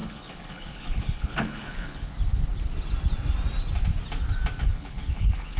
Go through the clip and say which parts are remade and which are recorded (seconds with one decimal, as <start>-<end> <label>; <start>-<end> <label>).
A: 0.0-2.1 remade; 2.1-4.6 recorded; 4.6-5.6 remade